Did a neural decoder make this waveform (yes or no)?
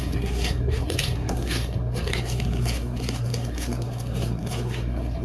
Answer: yes